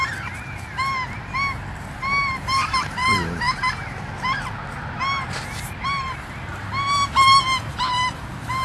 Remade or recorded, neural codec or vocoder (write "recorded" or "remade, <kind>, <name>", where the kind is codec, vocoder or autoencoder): recorded